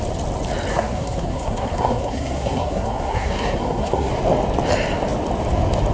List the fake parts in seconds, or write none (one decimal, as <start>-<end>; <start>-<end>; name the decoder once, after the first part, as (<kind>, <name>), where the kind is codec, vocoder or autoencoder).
0.7-4.1 (codec, SNAC)